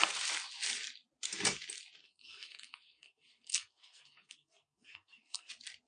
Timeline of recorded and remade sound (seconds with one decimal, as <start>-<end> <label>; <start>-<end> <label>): 0.0-2.0 recorded; 2.0-5.5 remade; 5.5-5.9 recorded